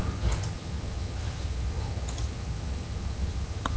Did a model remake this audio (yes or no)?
yes